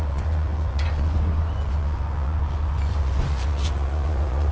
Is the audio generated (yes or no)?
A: yes